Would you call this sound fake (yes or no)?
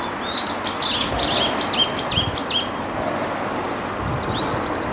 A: no